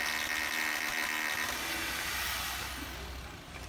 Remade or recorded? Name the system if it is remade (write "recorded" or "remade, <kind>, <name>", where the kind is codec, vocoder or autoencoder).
recorded